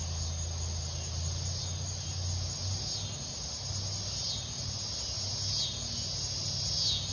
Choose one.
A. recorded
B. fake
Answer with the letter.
A